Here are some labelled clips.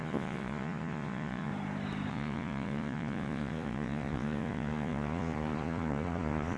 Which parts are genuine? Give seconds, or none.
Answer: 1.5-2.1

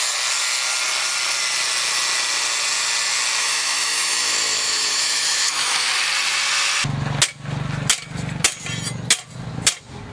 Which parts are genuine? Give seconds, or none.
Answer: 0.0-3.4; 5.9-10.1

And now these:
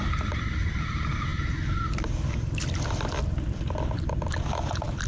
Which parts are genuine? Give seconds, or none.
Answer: 0.0-5.1

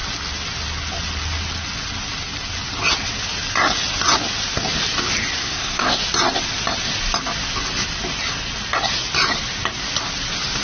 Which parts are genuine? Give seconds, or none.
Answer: 0.0-5.4; 6.0-10.6

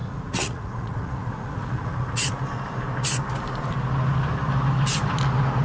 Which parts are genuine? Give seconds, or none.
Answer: 2.4-5.6

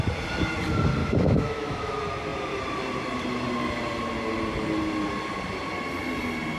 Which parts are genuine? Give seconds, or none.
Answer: 0.0-1.0; 1.9-6.6

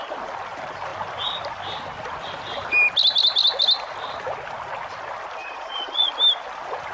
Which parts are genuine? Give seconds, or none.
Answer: 0.0-5.4; 6.1-6.9

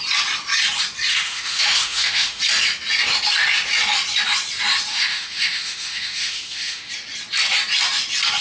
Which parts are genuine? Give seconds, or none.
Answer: 0.0-1.1; 2.4-4.9; 6.9-8.4